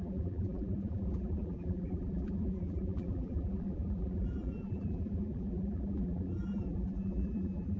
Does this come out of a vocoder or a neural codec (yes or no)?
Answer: yes